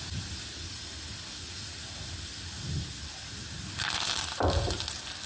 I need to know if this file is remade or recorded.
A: recorded